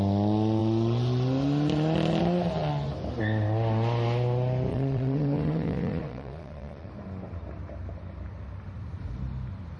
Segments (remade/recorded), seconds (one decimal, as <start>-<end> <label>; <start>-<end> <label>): 0.0-4.7 recorded; 4.7-6.9 remade; 6.9-9.8 recorded